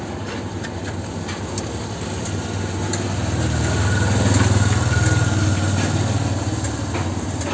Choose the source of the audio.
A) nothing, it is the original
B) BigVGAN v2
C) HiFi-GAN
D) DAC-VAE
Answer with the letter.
A